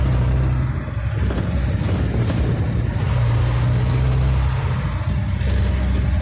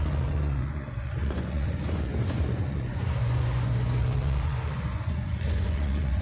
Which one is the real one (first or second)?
first